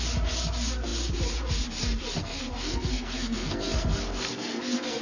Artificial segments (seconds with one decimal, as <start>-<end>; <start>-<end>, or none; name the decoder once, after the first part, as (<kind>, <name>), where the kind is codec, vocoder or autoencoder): 2.2-5.0 (codec, SNAC)